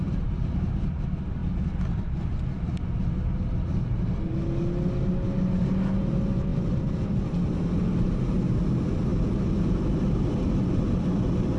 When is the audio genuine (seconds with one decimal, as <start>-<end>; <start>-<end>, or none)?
0.0-11.6